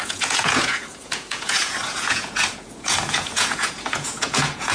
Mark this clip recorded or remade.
remade